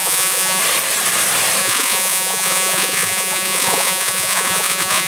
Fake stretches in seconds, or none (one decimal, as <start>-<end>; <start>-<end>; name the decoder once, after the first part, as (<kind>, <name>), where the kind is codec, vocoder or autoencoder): 0.0-0.6 (vocoder, Vocos); 1.6-5.1